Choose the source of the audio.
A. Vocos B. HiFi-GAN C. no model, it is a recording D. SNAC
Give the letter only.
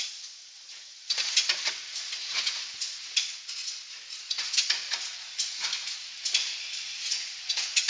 A